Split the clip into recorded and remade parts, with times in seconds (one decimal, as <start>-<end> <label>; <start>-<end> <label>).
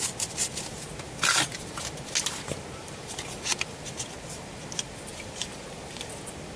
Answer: 0.0-2.8 recorded; 2.8-3.5 remade; 3.5-5.1 recorded; 5.1-6.1 remade; 6.1-6.6 recorded